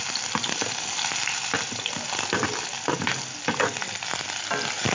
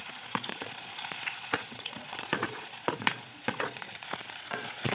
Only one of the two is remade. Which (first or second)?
second